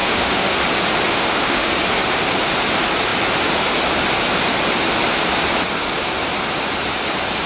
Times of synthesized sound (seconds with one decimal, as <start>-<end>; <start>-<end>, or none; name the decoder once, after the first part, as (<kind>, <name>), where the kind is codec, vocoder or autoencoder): 0.0-0.6 (autoencoder, DAC-VAE); 1.1-1.7